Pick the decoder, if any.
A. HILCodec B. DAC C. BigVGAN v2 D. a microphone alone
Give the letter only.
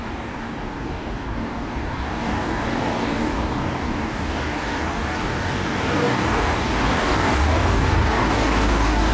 B